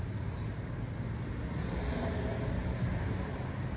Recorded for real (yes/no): yes